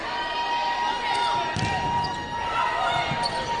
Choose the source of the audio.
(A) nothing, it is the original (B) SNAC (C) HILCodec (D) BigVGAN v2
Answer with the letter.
A